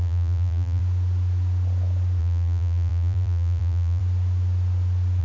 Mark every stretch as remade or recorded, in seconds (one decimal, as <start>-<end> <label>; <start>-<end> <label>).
0.0-0.8 remade; 0.8-2.2 recorded; 2.2-4.0 remade; 4.0-5.2 recorded